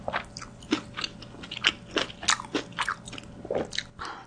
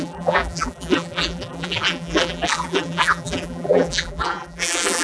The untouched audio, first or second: first